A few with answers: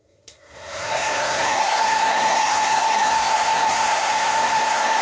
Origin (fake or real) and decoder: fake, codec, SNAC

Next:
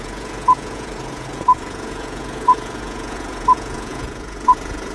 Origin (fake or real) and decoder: fake, vocoder, Vocos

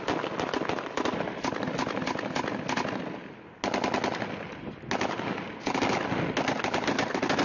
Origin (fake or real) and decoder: real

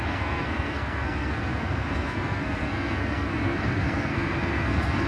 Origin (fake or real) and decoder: fake, codec, SNAC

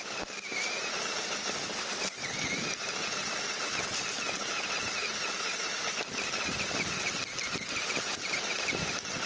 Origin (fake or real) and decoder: real